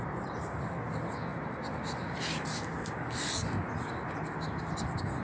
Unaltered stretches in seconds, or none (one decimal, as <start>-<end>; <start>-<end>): 0.0-5.2